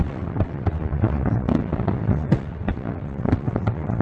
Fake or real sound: fake